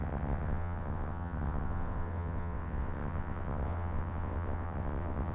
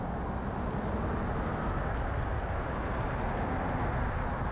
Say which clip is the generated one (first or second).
first